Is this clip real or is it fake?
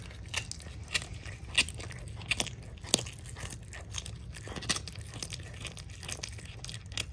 real